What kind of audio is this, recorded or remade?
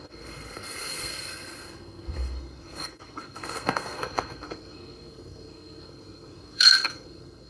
remade